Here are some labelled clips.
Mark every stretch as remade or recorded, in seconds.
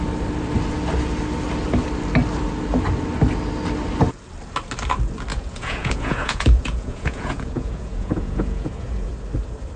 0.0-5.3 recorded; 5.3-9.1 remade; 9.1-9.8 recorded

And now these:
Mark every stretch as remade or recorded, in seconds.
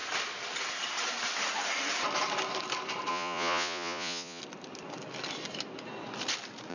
0.0-3.1 recorded; 3.1-4.4 remade; 4.4-6.7 recorded